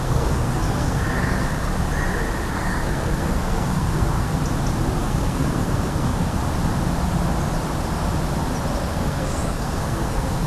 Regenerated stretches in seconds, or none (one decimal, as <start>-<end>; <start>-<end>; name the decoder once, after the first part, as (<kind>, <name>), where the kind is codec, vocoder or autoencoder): 0.0-1.7 (codec, SNAC); 2.5-4.4; 5.0-6.4; 8.9-10.5